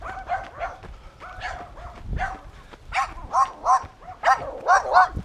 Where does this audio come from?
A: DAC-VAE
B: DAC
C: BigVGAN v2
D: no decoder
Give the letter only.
D